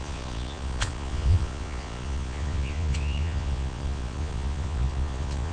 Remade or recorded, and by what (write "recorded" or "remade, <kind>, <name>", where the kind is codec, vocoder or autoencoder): remade, vocoder, Vocos